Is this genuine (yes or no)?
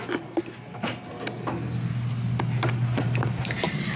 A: yes